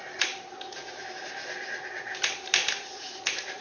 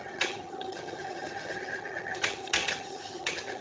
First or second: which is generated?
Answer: second